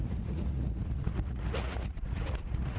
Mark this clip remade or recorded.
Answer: remade